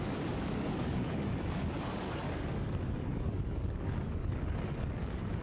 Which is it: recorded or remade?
remade